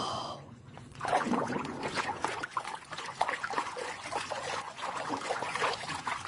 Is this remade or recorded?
remade